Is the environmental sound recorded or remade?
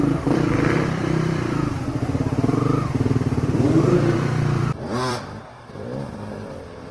remade